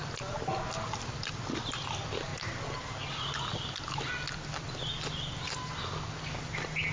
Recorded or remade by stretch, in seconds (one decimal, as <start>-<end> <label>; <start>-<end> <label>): 0.0-6.9 recorded